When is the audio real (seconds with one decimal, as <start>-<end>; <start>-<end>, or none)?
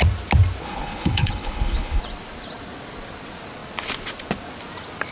0.0-0.6; 2.0-5.1